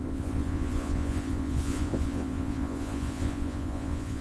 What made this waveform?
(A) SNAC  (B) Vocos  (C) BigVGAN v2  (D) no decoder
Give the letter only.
B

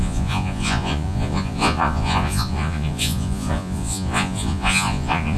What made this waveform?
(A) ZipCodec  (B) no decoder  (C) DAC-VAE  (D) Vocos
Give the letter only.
D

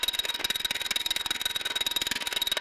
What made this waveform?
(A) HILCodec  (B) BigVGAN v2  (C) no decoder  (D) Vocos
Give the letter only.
C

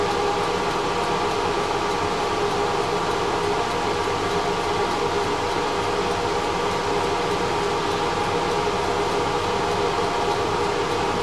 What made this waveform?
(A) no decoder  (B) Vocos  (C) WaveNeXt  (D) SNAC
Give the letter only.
A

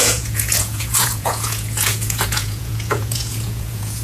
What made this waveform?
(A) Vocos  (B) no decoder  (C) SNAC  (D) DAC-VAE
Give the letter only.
A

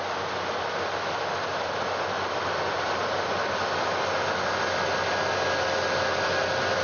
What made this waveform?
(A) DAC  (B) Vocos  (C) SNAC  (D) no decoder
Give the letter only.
D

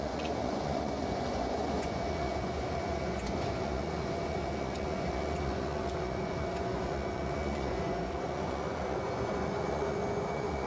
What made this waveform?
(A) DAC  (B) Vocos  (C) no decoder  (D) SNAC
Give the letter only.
B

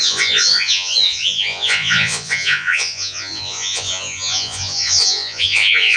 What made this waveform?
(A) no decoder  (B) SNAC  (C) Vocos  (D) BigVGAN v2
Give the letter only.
C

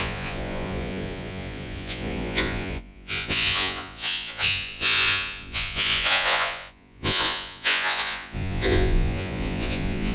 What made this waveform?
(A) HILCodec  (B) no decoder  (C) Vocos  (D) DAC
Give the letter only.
C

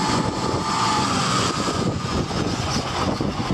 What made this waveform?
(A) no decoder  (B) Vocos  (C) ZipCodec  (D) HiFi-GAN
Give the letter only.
B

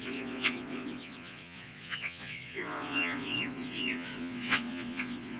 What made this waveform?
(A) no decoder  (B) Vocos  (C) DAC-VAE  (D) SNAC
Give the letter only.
B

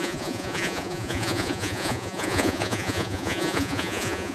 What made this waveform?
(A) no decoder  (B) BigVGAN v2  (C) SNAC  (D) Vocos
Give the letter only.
D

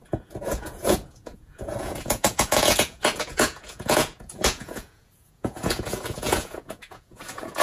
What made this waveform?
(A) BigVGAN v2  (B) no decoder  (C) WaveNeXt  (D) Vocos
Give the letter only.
D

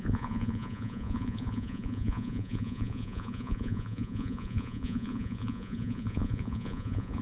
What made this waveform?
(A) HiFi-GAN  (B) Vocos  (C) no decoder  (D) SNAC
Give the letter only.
B